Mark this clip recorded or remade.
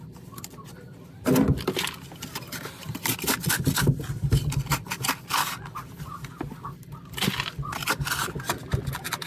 recorded